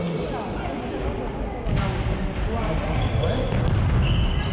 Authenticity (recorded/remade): recorded